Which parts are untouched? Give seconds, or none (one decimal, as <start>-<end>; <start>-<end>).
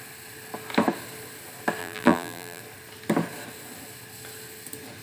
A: 0.0-1.8; 2.6-5.0